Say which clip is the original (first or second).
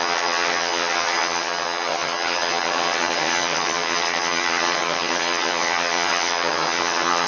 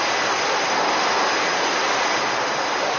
second